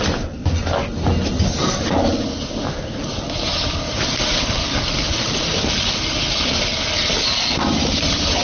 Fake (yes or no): no